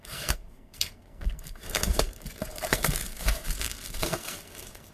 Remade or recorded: remade